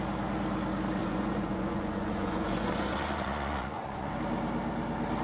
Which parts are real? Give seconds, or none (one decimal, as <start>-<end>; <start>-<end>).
0.0-1.0; 4.1-5.2